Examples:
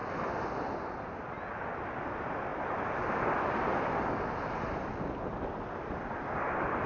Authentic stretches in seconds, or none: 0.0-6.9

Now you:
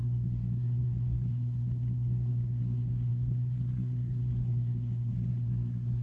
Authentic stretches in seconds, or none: none

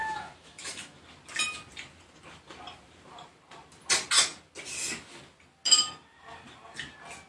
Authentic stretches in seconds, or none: 1.0-7.3

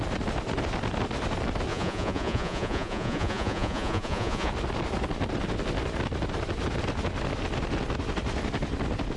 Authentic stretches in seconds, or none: 0.0-1.7; 4.5-9.2

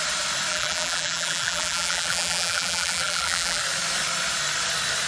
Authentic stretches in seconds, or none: 0.0-0.5; 3.6-5.1

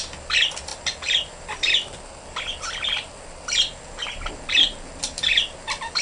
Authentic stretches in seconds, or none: 0.0-6.0

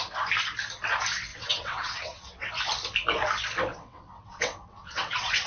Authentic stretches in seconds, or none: 0.0-1.3; 2.5-3.7